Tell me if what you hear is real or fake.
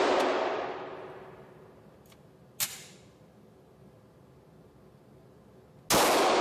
real